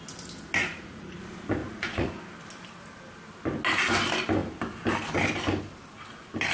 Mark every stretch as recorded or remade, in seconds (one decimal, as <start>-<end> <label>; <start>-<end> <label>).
0.0-0.6 recorded; 0.6-1.2 remade; 1.2-1.6 recorded; 1.6-2.2 remade; 2.2-6.5 recorded